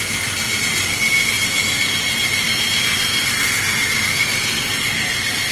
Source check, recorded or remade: recorded